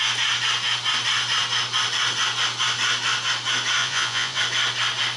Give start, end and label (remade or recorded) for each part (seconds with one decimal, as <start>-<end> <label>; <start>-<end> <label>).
0.0-3.8 recorded; 3.8-4.4 remade; 4.4-5.2 recorded